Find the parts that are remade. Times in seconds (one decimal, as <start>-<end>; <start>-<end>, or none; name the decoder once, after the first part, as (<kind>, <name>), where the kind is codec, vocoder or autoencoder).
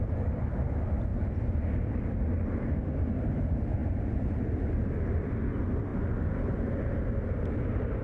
1.1-2.4 (vocoder, BigVGAN v2); 3.8-5.3